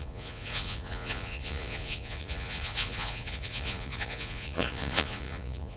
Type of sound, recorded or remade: remade